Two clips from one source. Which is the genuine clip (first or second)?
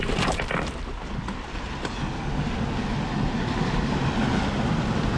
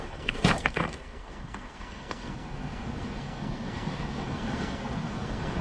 first